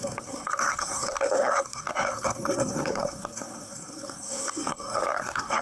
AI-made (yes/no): yes